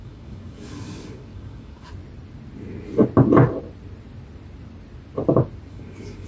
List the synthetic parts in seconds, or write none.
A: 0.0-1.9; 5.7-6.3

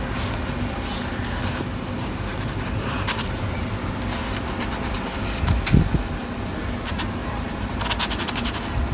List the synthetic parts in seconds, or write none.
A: 2.3-3.4; 7.2-7.7

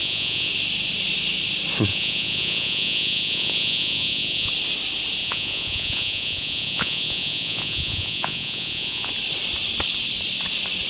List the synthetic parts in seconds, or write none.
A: 0.0-0.5; 1.9-4.5; 5.2-9.1

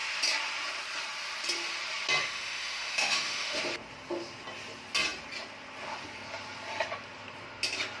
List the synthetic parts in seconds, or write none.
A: 2.2-3.6

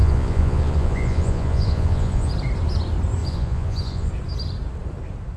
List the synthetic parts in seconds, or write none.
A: 0.0-2.3; 3.2-4.1

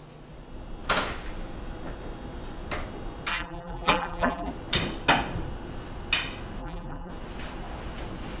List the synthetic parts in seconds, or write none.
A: 3.3-4.5; 6.6-7.1